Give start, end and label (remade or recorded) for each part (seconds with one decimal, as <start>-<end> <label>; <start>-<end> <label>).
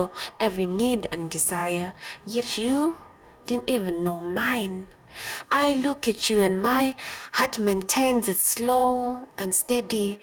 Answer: 0.0-10.2 remade